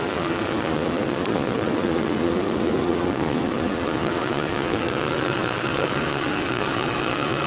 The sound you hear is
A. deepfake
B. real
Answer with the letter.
A